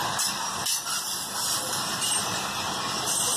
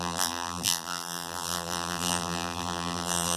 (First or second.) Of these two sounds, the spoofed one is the second